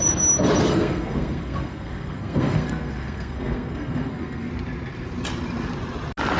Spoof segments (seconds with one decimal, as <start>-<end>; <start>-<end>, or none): 0.7-4.5